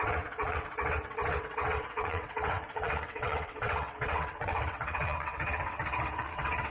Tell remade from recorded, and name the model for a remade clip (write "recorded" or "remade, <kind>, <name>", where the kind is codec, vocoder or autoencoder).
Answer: remade, vocoder, WaveNeXt